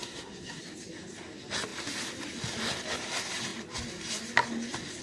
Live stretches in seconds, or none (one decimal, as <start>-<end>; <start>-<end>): 0.6-5.0